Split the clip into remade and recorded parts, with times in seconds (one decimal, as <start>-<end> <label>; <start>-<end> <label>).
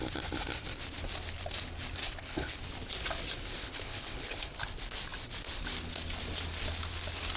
0.0-2.0 recorded; 2.0-2.6 remade; 2.6-3.6 recorded; 3.6-4.6 remade; 4.6-7.4 recorded